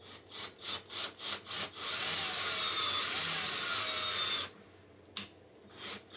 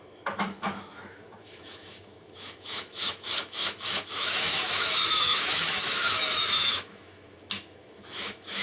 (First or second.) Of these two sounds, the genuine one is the first